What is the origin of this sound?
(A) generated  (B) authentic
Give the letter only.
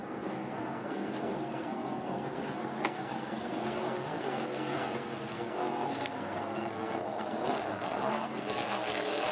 A